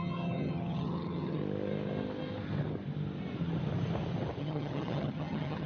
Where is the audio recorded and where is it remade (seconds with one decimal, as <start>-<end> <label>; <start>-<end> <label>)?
0.0-1.4 remade; 1.4-4.4 recorded; 4.4-5.7 remade